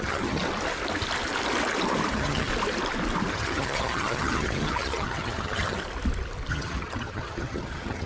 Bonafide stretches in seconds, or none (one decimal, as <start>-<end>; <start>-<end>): 0.4-2.1; 2.5-3.3; 5.8-6.5